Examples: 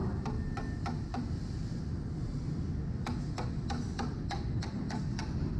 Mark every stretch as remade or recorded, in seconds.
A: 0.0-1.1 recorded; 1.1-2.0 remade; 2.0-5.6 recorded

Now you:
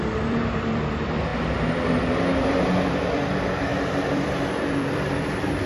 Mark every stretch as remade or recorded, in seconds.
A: 0.0-1.3 remade; 1.3-2.9 recorded; 2.9-5.7 remade

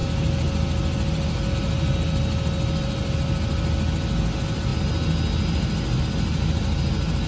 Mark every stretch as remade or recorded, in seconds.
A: 0.0-7.3 recorded

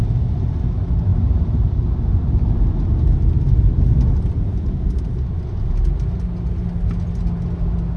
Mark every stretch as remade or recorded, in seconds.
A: 0.0-1.1 recorded; 1.1-5.7 remade; 5.7-8.0 recorded

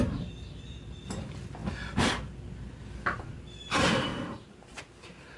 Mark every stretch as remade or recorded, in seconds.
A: 0.0-4.1 recorded; 4.1-4.8 remade; 4.8-5.4 recorded

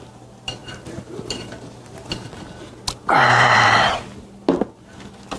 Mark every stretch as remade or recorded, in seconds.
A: 0.0-0.6 recorded; 0.6-1.5 remade; 1.5-5.4 recorded

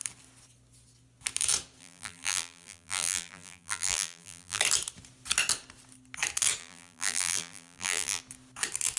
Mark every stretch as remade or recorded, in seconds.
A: 0.0-1.8 recorded; 1.8-4.6 remade; 4.6-6.6 recorded; 6.6-8.2 remade; 8.2-9.0 recorded